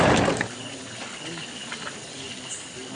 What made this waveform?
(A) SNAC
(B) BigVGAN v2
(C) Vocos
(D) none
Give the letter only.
D